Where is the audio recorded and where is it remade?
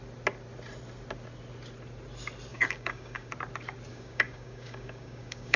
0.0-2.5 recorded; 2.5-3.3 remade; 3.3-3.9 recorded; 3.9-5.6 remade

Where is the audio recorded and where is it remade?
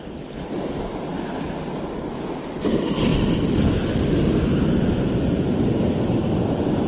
0.0-6.9 recorded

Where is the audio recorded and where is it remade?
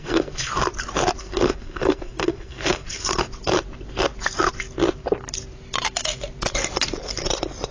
0.0-0.5 remade; 0.5-1.2 recorded; 1.2-3.1 remade; 3.1-7.7 recorded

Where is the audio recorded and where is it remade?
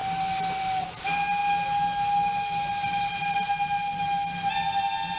0.0-5.2 recorded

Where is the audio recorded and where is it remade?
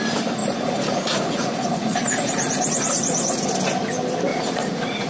0.0-0.4 recorded; 0.4-3.5 remade; 3.5-4.3 recorded; 4.3-5.1 remade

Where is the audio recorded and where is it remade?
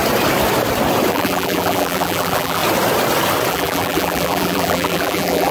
0.0-1.1 recorded; 1.1-2.6 remade; 2.6-3.5 recorded; 3.5-5.5 remade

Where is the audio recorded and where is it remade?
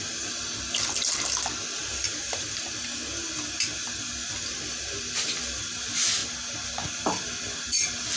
0.0-8.2 recorded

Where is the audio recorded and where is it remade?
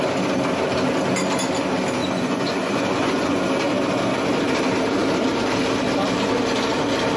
0.0-2.0 recorded; 2.0-3.4 remade; 3.4-7.2 recorded